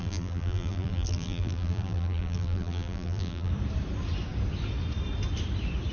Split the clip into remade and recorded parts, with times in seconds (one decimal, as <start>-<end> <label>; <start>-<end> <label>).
0.0-3.5 remade; 3.5-5.9 recorded